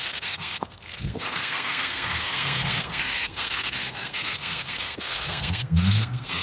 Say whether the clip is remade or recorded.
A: remade